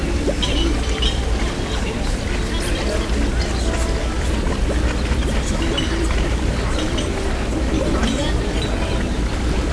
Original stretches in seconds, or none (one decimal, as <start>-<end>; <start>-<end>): 0.0-9.7

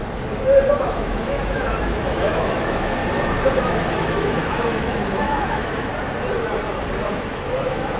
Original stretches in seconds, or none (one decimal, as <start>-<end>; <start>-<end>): 0.0-0.8; 3.0-3.6; 5.9-7.1